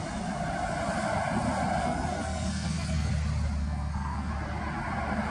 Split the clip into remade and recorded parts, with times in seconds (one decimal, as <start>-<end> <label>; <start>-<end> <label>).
0.0-1.8 recorded; 1.8-3.1 remade; 3.1-3.6 recorded; 3.6-4.3 remade; 4.3-5.3 recorded